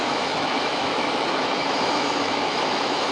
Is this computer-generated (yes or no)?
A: yes